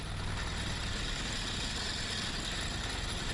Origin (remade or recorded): recorded